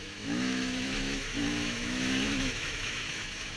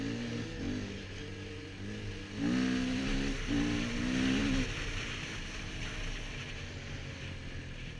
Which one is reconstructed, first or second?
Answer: first